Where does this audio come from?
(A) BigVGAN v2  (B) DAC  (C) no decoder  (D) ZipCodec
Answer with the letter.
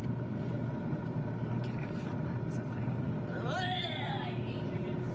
A